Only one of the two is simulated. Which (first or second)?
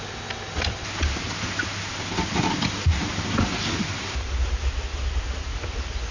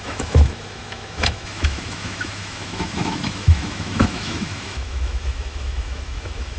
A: second